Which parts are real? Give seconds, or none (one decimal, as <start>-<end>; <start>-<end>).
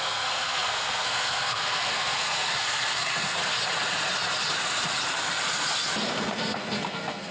3.4-6.1